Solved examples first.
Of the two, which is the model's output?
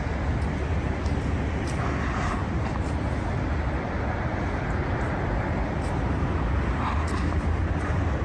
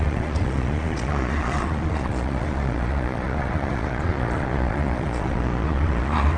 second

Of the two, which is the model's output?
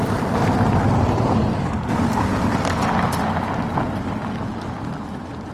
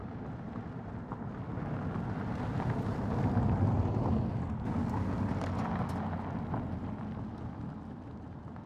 first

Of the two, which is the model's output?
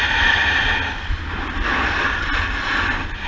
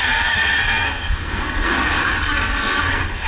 second